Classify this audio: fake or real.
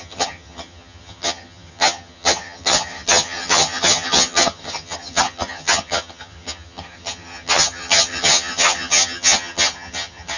fake